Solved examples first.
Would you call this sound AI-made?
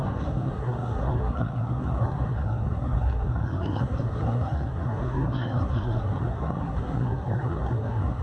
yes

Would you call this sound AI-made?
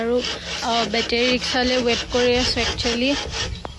no